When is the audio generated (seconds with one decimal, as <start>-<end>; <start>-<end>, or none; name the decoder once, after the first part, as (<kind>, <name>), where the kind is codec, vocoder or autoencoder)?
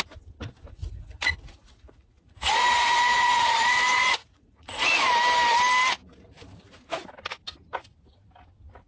0.8-5.1 (vocoder, Vocos)